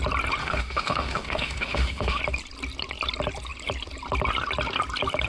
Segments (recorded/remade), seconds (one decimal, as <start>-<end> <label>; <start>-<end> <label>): 0.0-0.4 recorded; 0.4-2.2 remade; 2.2-5.3 recorded